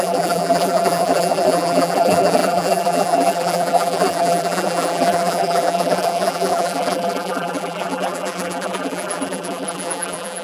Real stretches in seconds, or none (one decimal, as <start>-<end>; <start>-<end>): none